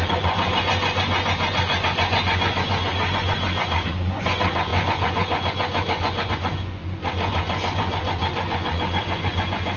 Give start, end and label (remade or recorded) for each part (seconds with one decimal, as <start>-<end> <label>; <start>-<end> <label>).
0.0-9.8 remade